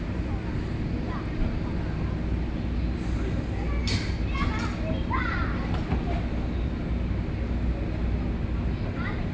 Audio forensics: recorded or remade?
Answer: recorded